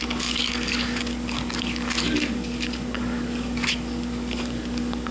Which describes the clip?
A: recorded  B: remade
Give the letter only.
B